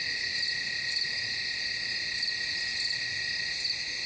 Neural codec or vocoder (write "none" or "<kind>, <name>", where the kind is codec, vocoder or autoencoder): none